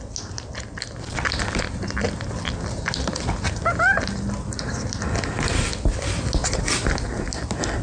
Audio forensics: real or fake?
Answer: real